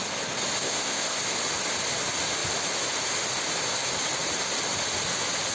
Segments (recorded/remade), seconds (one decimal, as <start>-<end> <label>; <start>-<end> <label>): 0.0-0.6 recorded; 0.6-1.2 remade; 1.2-5.5 recorded

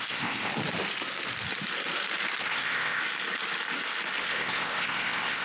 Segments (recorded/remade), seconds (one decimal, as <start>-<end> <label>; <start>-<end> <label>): 0.0-0.5 remade; 0.5-2.4 recorded; 2.4-3.0 remade; 3.0-4.2 recorded; 4.2-5.4 remade

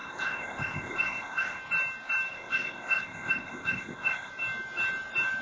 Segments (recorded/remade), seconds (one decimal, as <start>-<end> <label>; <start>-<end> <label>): 0.0-1.6 remade; 1.6-2.3 recorded; 2.3-4.3 remade; 4.3-5.4 recorded

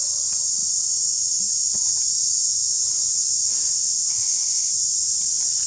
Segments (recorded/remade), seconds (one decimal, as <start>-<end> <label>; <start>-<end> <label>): 0.0-4.1 recorded; 4.1-4.7 remade; 4.7-5.7 recorded